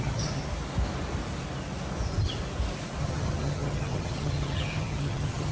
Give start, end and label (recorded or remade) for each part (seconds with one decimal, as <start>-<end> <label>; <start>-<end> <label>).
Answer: 0.0-0.4 remade; 0.4-3.0 recorded; 3.0-5.5 remade